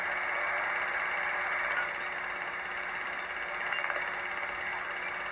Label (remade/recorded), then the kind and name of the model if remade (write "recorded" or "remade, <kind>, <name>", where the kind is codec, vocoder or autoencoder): recorded